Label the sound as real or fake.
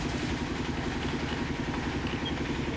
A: real